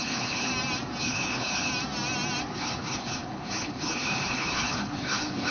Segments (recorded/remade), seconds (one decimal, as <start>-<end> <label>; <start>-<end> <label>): 0.0-0.5 remade; 0.5-1.0 recorded; 1.0-1.7 remade; 1.7-2.5 recorded; 2.5-5.5 remade